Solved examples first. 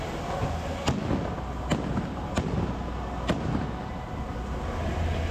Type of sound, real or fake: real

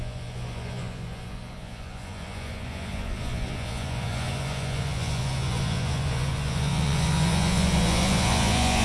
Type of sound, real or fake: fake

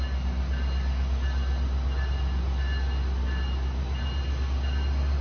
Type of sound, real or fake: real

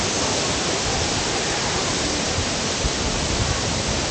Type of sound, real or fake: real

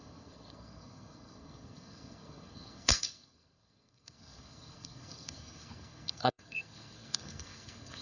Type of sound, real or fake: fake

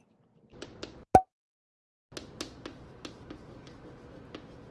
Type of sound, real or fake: real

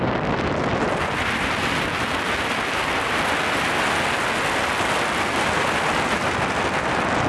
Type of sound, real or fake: real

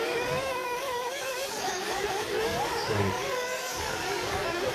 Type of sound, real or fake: fake